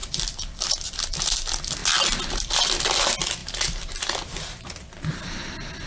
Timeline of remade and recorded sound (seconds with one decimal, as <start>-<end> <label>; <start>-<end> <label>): 0.0-1.1 remade; 1.1-5.9 recorded